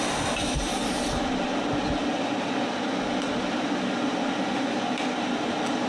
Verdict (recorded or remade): recorded